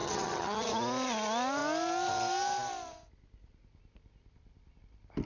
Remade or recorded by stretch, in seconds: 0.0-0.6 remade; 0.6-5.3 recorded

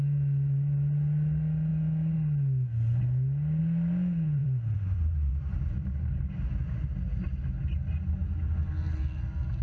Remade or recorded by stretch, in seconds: 0.0-4.4 recorded; 4.4-6.1 remade; 6.1-9.6 recorded

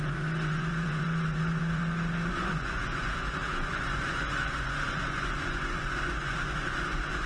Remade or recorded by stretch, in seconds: 0.0-1.8 remade; 1.8-2.3 recorded; 2.3-7.3 remade

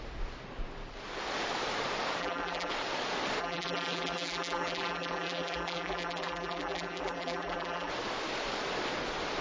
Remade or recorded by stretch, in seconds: 0.0-2.2 recorded; 2.2-2.7 remade; 2.7-3.4 recorded; 3.4-7.9 remade; 7.9-9.4 recorded

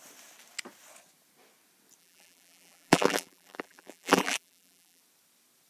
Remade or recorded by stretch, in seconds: 0.0-2.0 recorded; 2.0-5.0 remade; 5.0-5.7 recorded

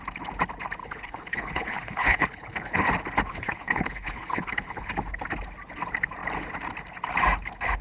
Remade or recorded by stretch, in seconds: 0.0-0.8 recorded; 0.8-2.9 remade; 2.9-3.3 recorded; 3.3-4.9 remade; 4.9-7.8 recorded

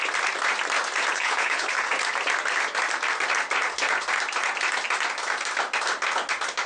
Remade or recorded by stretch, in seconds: 0.0-1.1 recorded; 1.1-1.9 remade; 1.9-6.7 recorded

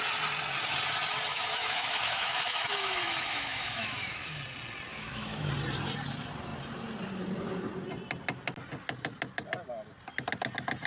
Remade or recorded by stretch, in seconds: 0.0-1.3 recorded; 1.3-4.4 remade; 4.4-4.9 recorded; 4.9-5.5 remade; 5.5-10.9 recorded